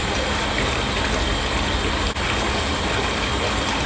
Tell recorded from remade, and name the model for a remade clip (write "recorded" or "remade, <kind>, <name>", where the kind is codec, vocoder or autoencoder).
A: recorded